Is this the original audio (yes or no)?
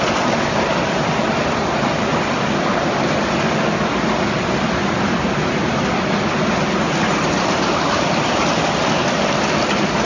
yes